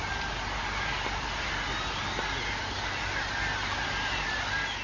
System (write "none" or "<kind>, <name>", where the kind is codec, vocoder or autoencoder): none